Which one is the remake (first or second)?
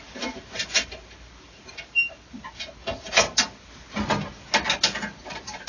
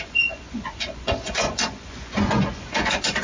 second